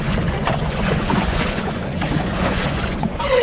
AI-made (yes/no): yes